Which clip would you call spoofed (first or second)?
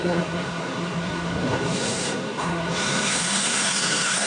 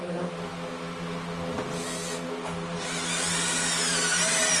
first